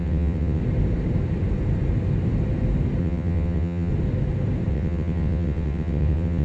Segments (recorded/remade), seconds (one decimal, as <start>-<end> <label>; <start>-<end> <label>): 0.0-0.6 remade; 0.6-3.0 recorded; 3.0-3.9 remade; 3.9-4.7 recorded; 4.7-6.4 remade